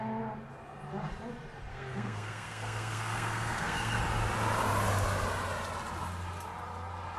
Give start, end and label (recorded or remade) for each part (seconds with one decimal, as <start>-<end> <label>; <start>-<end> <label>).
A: 0.0-1.7 recorded; 1.7-4.0 remade; 4.0-7.2 recorded